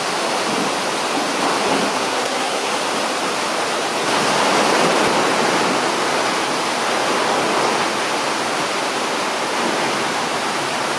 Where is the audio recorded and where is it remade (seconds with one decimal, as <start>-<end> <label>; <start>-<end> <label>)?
0.0-1.9 recorded; 1.9-2.7 remade; 2.7-11.0 recorded